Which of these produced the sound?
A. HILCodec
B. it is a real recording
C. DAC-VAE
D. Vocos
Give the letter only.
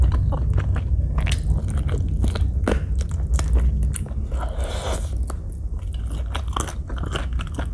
B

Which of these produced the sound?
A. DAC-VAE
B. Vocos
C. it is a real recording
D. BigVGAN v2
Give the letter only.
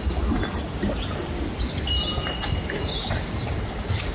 C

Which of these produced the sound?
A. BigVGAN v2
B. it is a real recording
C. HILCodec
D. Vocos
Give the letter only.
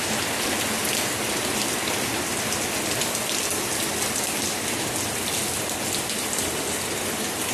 B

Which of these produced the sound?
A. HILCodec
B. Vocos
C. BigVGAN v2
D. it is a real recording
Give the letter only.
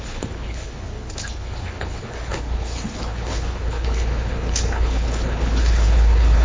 A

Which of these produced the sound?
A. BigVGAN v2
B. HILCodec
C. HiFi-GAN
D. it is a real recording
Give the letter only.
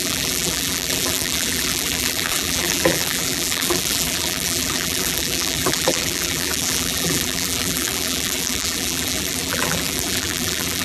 A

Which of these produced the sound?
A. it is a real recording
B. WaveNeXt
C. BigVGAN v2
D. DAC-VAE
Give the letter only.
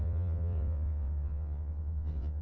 B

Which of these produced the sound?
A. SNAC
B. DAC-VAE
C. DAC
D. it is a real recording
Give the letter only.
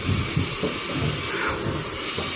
D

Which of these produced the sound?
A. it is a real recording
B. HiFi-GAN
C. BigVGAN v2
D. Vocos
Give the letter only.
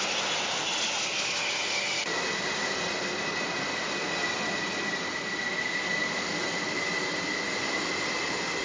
A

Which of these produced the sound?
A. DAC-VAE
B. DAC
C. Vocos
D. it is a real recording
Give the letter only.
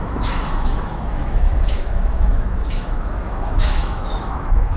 A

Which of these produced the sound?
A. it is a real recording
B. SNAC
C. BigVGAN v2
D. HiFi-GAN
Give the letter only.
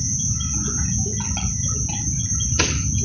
A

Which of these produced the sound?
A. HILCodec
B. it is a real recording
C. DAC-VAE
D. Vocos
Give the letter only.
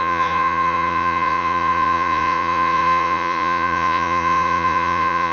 D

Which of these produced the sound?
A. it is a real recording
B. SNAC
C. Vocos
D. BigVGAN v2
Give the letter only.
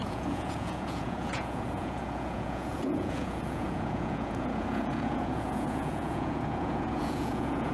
C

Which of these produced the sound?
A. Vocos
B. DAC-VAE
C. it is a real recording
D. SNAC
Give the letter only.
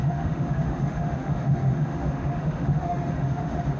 B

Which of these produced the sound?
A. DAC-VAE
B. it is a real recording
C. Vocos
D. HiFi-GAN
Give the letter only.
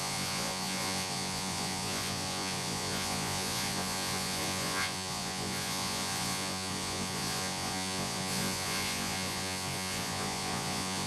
C